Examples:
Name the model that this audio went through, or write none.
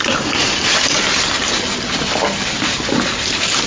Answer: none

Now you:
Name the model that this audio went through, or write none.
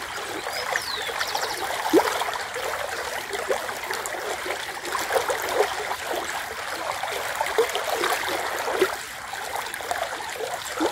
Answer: vocoder, BigVGAN v2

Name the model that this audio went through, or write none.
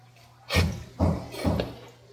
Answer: none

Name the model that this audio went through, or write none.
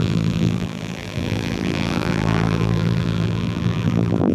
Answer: vocoder, BigVGAN v2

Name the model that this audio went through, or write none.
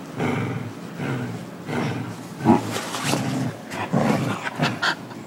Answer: none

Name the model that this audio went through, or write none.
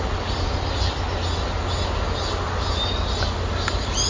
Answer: none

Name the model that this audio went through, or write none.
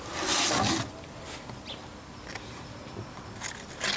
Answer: none